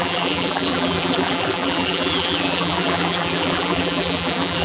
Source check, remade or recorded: remade